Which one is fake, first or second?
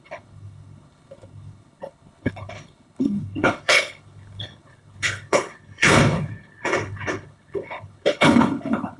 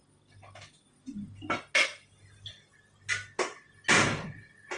first